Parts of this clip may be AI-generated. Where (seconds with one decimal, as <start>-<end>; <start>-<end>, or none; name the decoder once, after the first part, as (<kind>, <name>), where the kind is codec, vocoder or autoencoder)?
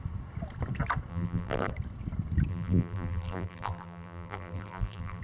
1.1-1.7 (vocoder, BigVGAN v2); 2.5-5.2